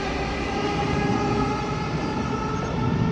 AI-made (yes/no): no